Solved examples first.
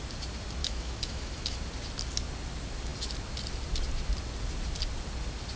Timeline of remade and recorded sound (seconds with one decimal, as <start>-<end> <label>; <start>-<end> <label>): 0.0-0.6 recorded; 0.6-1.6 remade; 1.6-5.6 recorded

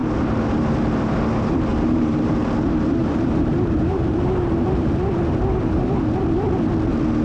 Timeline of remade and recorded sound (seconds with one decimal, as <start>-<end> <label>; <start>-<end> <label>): 0.0-1.7 recorded; 1.7-2.4 remade; 2.4-3.0 recorded; 3.0-6.7 remade; 6.7-7.2 recorded

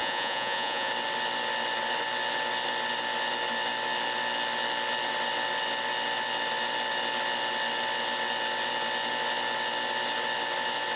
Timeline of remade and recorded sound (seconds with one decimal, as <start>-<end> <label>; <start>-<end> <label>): 0.0-0.9 remade; 0.9-11.0 recorded